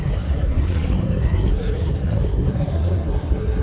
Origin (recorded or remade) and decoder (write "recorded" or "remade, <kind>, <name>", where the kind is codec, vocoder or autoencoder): remade, codec, SNAC